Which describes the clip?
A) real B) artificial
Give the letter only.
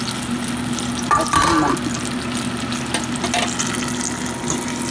A